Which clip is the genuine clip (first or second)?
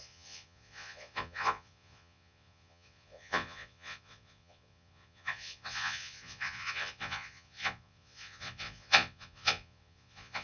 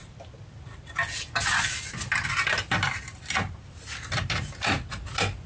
second